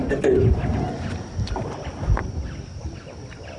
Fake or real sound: real